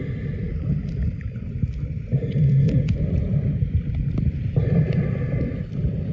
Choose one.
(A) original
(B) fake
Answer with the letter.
A